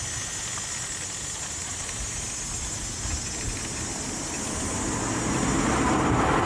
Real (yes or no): yes